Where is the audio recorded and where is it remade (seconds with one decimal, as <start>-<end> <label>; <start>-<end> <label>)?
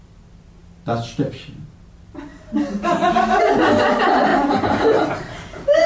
0.0-5.9 recorded